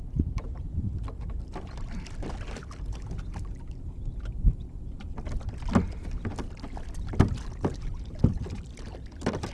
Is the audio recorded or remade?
recorded